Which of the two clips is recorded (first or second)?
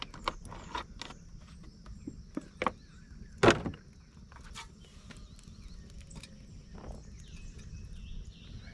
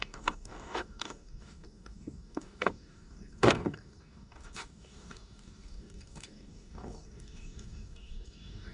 first